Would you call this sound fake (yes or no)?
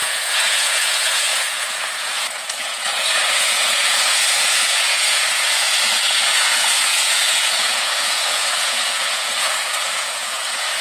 yes